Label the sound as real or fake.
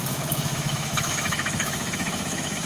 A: fake